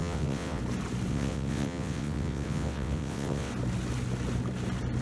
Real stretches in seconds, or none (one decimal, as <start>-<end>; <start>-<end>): 0.6-1.1; 3.5-5.0